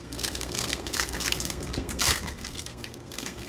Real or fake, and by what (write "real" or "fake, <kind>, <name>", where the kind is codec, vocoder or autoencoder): fake, codec, SNAC